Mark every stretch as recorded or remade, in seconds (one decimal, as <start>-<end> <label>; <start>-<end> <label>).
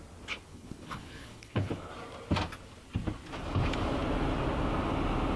0.0-0.5 recorded; 0.5-1.9 remade; 1.9-5.4 recorded